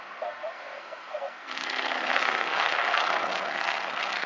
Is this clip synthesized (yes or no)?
yes